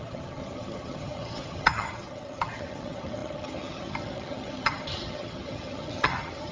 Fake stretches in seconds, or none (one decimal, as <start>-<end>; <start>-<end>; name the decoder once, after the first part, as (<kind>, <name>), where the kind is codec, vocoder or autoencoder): 0.0-6.5 (vocoder, HiFi-GAN)